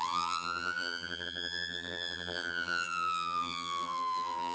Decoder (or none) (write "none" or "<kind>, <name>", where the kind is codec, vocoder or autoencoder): vocoder, BigVGAN v2